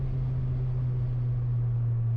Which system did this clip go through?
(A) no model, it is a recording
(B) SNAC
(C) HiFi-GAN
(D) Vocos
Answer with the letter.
A